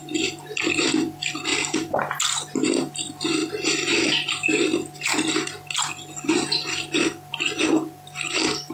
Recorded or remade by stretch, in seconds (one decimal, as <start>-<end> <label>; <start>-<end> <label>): 0.0-8.7 recorded